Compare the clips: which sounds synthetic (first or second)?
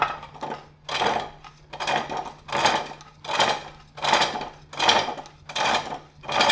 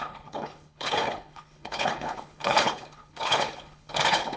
second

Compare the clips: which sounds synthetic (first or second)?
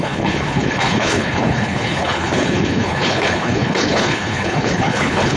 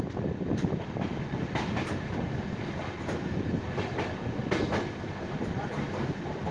first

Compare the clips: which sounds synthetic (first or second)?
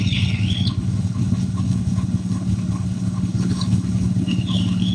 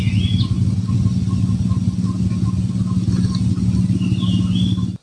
first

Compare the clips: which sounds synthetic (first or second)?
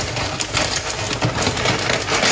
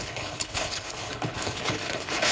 second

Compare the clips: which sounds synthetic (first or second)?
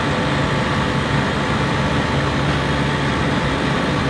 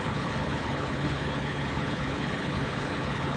second